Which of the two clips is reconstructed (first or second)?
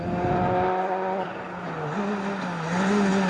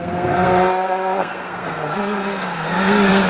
second